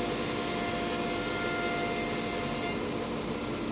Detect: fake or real real